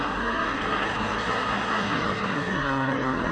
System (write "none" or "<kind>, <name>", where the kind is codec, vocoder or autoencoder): codec, SNAC